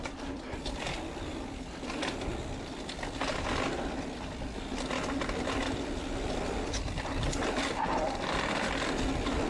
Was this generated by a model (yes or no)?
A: no